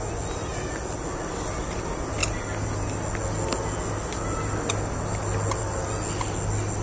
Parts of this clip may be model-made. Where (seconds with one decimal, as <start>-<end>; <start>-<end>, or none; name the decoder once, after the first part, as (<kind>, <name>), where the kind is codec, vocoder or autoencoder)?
none